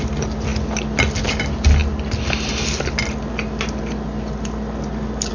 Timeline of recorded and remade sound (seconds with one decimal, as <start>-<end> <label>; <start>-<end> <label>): 0.0-5.3 recorded